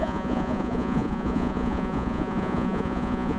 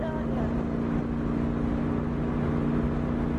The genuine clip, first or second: second